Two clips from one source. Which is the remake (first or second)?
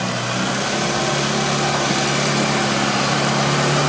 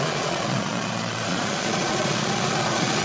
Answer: second